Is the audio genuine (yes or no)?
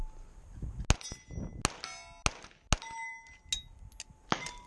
yes